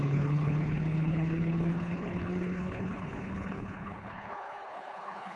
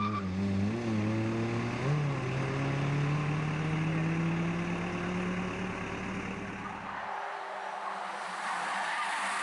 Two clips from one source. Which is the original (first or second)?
second